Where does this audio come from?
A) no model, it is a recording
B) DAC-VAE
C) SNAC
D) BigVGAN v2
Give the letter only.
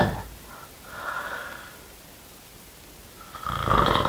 A